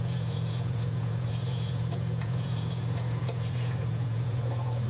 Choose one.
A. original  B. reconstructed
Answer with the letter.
B